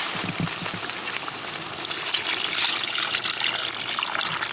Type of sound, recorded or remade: recorded